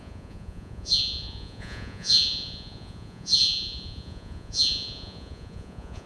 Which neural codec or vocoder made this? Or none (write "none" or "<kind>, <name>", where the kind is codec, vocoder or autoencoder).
vocoder, Vocos